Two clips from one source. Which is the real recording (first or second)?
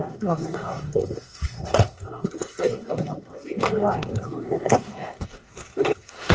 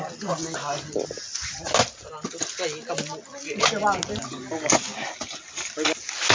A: second